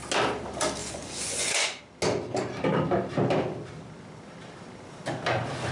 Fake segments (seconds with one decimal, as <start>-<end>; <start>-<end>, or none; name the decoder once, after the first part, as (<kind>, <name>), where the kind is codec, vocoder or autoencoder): 0.8-1.8 (vocoder, Vocos)